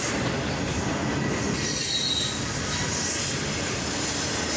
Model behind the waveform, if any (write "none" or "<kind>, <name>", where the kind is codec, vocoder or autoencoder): none